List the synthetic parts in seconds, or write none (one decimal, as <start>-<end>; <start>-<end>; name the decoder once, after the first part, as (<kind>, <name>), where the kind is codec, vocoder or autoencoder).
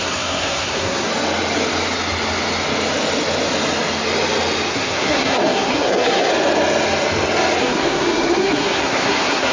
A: 0.0-1.1 (codec, SNAC); 4.7-6.3; 7.6-9.5